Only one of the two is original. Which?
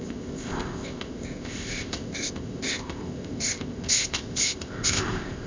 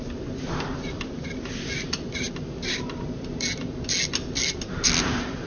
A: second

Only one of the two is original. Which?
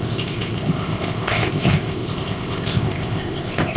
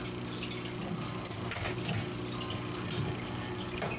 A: second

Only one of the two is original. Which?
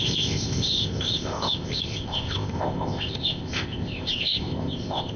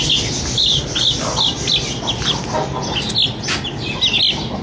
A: second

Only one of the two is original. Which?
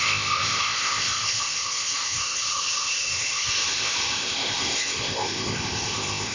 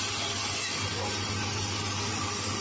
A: second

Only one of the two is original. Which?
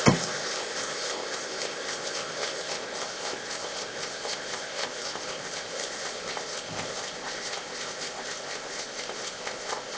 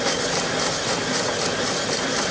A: second